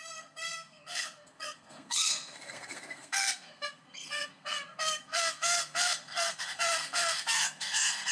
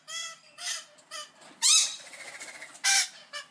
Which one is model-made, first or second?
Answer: first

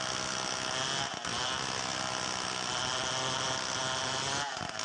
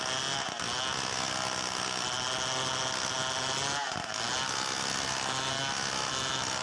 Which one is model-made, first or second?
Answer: first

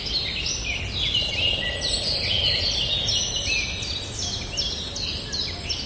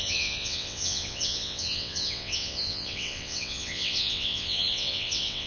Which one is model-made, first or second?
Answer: second